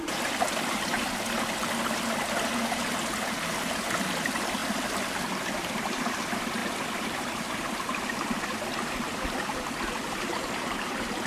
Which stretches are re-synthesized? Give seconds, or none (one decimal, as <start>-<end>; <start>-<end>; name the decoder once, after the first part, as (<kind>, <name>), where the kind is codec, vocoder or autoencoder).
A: 4.6-5.8 (vocoder, BigVGAN v2); 6.6-7.5